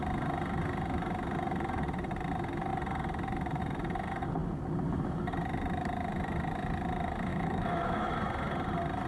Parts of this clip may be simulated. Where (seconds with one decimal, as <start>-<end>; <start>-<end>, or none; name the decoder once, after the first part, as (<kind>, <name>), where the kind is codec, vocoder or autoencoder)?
7.3-8.1 (autoencoder, DAC-VAE)